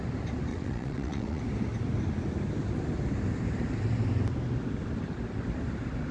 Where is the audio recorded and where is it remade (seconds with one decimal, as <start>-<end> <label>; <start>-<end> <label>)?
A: 0.0-0.5 recorded; 0.5-1.4 remade; 1.4-6.1 recorded